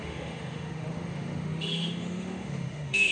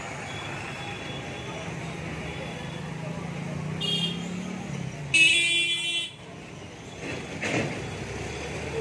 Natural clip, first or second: second